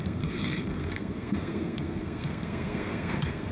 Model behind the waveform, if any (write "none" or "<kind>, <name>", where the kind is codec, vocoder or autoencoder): codec, SNAC